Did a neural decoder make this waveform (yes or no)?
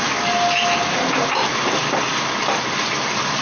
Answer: no